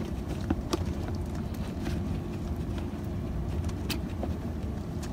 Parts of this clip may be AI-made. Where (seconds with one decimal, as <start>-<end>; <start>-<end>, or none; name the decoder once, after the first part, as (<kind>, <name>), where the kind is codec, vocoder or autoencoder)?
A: 0.0-1.1 (vocoder, BigVGAN v2); 3.9-5.1